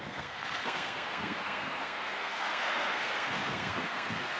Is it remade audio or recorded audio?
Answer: remade